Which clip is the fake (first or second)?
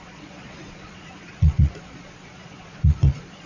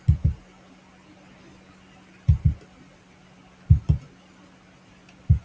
first